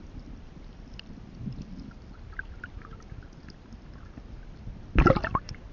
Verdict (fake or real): real